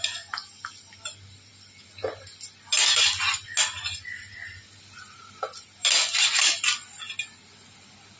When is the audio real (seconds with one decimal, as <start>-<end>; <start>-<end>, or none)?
0.0-8.2

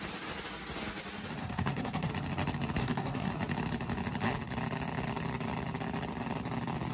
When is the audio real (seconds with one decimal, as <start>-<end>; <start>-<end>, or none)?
0.0-1.4; 2.1-2.8; 3.3-6.9